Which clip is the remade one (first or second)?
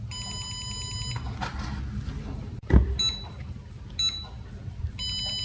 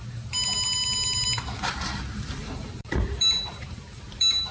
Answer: second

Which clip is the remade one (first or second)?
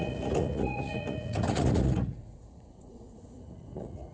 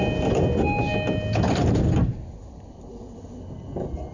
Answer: first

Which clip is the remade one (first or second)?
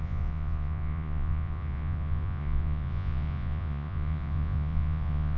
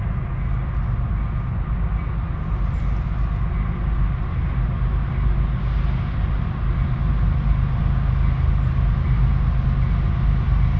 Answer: first